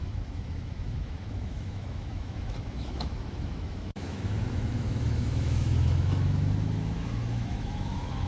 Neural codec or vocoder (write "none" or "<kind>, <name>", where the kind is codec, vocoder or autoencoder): autoencoder, DAC-VAE